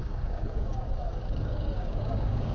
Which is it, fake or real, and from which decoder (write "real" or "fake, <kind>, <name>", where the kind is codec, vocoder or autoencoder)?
fake, codec, DAC